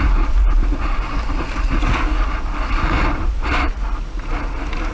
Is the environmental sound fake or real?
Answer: real